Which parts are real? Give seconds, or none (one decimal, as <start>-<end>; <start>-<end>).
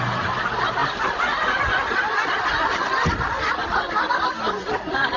0.0-5.2